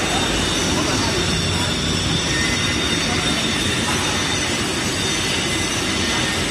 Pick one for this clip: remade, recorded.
recorded